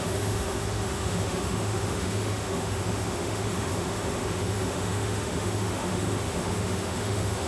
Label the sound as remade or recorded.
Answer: remade